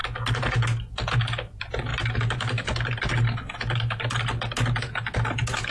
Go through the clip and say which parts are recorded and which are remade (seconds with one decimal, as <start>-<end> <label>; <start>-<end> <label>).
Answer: 0.0-5.7 recorded